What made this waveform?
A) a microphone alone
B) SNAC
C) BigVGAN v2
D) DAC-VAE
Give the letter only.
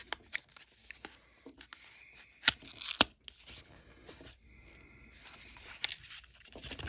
A